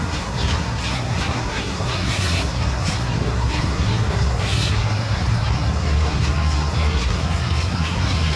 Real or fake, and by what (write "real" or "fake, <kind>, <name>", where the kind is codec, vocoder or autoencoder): fake, codec, SNAC